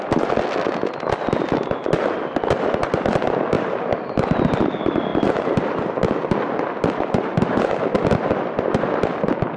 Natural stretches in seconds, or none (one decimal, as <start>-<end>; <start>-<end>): 0.0-9.6